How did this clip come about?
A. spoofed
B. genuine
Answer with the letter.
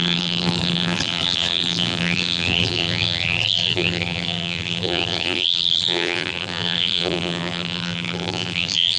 A